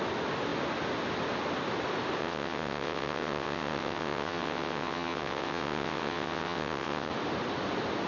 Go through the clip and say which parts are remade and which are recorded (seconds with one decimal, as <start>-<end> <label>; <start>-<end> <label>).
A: 0.0-2.2 recorded; 2.2-7.1 remade; 7.1-8.1 recorded